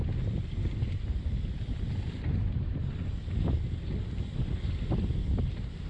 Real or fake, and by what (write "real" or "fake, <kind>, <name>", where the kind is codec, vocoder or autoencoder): real